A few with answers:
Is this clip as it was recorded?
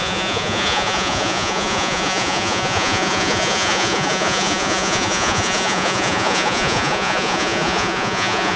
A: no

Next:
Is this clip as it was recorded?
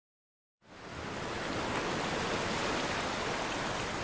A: yes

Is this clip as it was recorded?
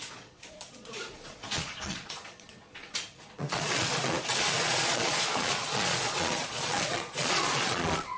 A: no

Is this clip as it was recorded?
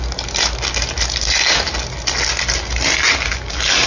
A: yes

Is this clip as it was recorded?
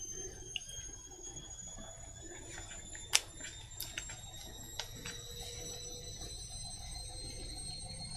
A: yes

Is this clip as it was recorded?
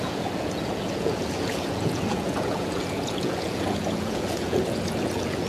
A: no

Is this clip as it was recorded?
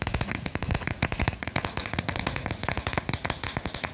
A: no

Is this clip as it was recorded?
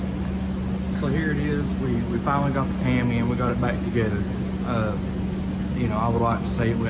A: yes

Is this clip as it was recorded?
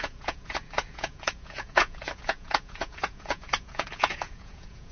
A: no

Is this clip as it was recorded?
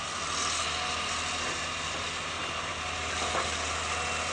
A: yes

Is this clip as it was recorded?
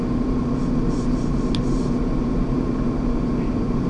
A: yes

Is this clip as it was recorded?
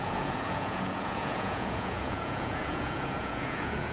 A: no